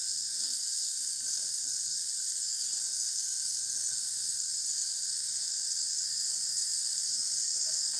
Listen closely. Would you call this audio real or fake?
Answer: fake